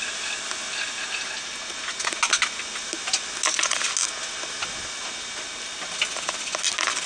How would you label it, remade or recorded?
recorded